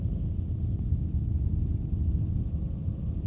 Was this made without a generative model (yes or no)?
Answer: yes